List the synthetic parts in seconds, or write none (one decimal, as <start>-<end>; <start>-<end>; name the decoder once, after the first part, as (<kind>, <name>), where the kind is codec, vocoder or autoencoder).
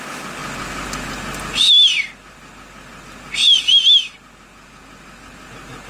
none